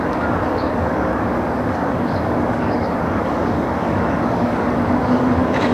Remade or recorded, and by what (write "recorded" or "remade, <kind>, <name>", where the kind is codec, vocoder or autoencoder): remade, codec, DAC